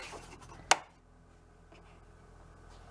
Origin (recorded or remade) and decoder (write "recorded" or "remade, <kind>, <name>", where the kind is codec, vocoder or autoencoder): recorded